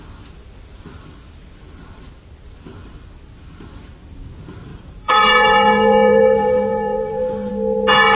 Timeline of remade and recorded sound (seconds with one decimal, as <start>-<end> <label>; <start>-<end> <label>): 0.0-4.7 recorded; 4.7-7.5 remade; 7.5-8.1 recorded